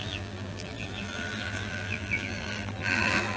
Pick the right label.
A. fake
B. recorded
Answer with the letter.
A